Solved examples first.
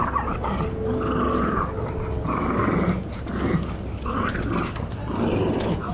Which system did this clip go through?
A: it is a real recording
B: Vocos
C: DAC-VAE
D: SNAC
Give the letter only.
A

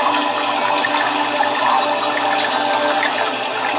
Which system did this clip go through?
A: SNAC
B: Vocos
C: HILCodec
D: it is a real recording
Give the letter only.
D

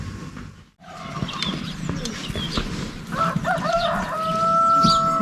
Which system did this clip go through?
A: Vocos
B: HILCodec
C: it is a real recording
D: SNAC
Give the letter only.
C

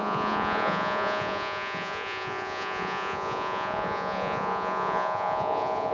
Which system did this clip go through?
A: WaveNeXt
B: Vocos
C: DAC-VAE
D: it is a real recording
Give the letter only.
B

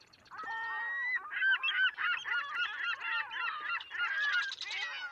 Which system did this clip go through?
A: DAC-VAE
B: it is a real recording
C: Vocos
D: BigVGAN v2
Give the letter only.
B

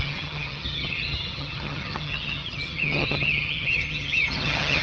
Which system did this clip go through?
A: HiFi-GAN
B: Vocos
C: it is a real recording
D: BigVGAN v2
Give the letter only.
A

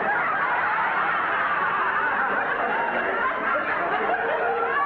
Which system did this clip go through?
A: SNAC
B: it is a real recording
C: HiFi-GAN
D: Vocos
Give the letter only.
B